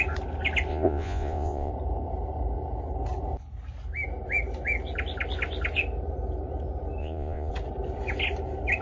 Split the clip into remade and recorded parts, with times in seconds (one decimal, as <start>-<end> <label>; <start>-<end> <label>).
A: 0.0-0.7 recorded; 0.7-1.7 remade; 1.7-7.0 recorded; 7.0-7.5 remade; 7.5-8.8 recorded